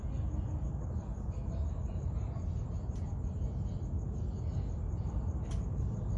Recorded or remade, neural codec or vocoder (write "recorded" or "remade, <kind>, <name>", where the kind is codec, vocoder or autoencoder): recorded